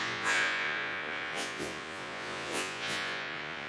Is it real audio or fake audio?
fake